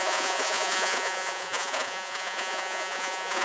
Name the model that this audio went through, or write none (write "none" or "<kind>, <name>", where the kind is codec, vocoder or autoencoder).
vocoder, Vocos